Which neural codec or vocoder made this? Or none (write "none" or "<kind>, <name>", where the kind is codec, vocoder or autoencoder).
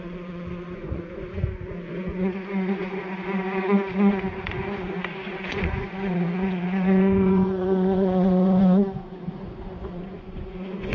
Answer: vocoder, Vocos